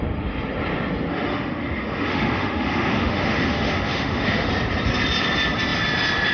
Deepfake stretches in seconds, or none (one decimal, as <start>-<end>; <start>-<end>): 1.1-4.5